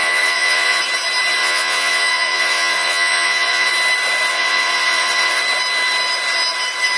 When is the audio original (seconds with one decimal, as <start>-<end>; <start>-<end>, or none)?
0.8-1.4; 3.7-4.3; 5.4-7.0